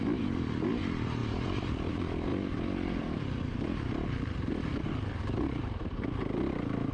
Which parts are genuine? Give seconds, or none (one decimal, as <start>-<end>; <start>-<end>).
0.0-2.3; 4.9-6.9